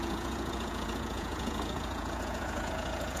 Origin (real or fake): fake